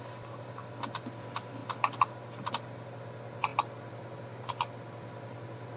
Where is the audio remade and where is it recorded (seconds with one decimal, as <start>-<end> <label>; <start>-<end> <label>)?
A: 0.0-5.8 recorded